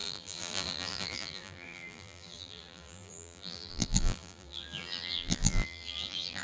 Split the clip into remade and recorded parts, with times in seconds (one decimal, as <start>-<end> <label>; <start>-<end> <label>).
0.0-6.4 remade

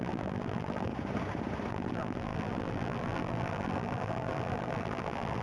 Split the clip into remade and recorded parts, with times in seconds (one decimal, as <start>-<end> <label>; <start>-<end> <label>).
0.0-0.9 remade; 0.9-1.7 recorded; 1.7-5.4 remade

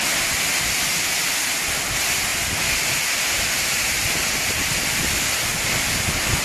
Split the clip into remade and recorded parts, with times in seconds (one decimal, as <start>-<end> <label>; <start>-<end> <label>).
0.0-6.4 recorded